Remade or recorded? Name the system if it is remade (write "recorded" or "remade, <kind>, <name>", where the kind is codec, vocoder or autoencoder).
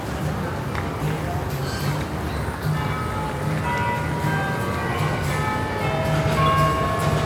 recorded